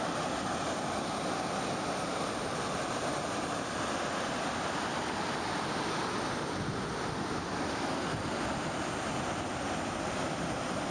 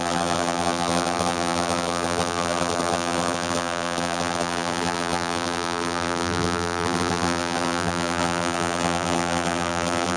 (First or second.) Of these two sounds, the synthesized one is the second